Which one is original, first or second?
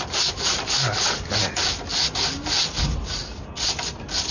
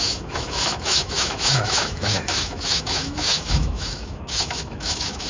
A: first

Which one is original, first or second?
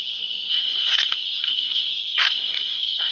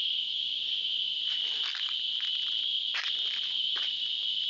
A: second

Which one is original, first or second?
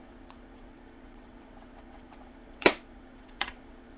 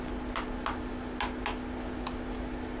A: second